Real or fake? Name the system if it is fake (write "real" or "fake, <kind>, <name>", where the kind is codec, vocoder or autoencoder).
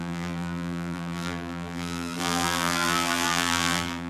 fake, vocoder, BigVGAN v2